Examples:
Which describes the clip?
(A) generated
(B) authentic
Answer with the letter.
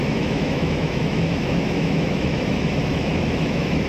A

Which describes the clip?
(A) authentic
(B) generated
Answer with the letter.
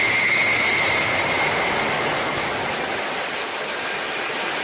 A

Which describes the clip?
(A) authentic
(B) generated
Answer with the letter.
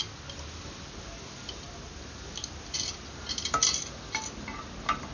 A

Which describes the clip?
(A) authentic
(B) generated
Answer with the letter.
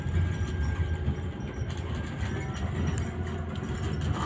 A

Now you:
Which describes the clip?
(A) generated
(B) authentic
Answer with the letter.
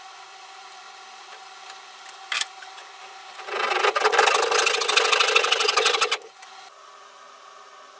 B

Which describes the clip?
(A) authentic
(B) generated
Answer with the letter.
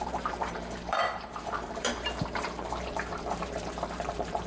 B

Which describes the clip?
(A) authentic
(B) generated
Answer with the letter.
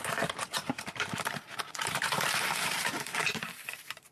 B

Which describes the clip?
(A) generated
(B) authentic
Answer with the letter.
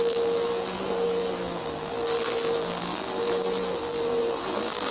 A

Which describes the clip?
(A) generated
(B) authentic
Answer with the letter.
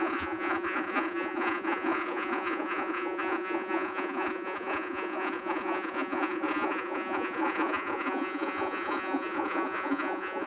A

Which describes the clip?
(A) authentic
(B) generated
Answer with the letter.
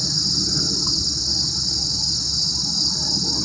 A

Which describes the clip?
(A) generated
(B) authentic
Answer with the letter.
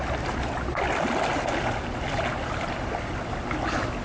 B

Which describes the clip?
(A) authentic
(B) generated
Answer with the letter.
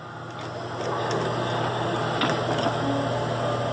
A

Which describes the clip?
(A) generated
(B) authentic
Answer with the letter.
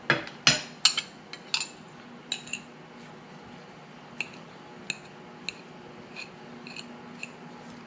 B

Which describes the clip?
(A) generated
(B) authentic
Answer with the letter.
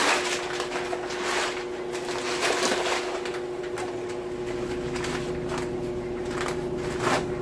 B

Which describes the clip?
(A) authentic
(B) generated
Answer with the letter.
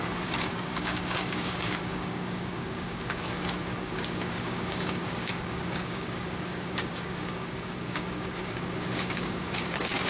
B